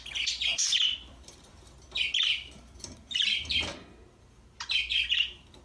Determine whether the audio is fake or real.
fake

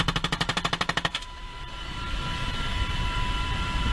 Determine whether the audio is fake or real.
fake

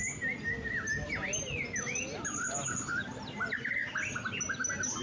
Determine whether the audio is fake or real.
real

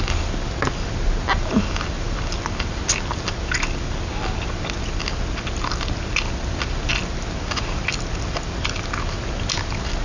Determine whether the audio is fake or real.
real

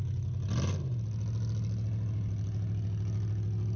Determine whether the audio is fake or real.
real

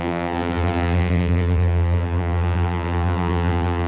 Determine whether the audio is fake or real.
fake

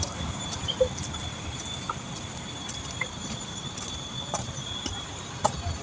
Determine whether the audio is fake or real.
fake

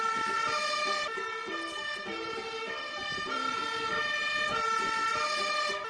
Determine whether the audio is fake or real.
fake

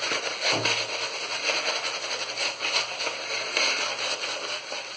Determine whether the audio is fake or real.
real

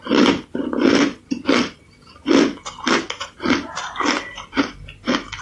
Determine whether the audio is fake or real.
real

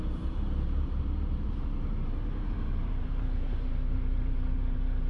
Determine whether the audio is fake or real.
fake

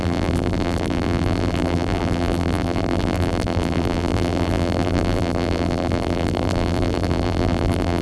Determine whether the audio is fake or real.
fake